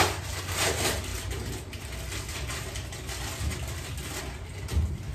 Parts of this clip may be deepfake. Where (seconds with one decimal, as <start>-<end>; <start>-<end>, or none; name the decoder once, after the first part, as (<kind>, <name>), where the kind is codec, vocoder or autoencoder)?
none